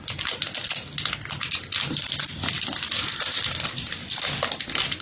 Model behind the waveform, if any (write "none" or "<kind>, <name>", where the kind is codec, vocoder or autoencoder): none